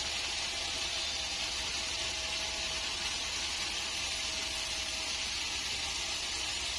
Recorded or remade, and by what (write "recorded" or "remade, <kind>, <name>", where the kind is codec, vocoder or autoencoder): recorded